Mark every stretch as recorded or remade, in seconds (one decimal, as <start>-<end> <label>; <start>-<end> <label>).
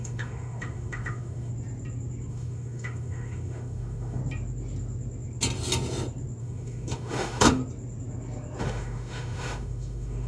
0.0-1.5 remade; 1.5-2.3 recorded; 2.3-4.2 remade; 4.2-6.4 recorded; 6.4-7.6 remade; 7.6-8.6 recorded; 8.6-10.3 remade